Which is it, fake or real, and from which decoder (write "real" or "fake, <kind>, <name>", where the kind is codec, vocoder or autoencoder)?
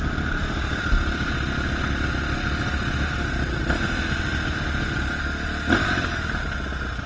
real